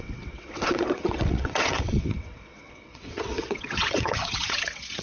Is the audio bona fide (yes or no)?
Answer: no